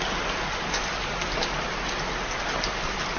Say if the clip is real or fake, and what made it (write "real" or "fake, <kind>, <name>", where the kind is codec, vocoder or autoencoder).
real